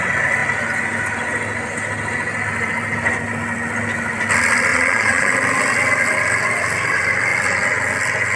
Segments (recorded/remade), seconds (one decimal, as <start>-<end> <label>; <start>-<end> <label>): 0.0-4.7 recorded; 4.7-5.3 remade; 5.3-8.4 recorded